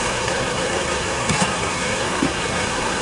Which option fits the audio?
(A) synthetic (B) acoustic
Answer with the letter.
A